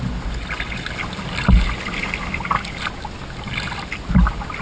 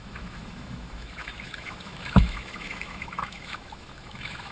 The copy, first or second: second